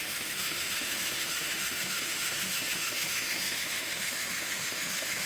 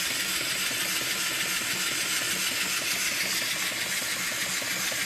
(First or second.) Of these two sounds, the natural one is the second